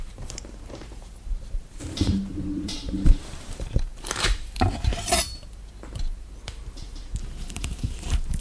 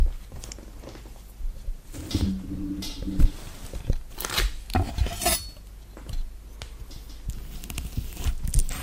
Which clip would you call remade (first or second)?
first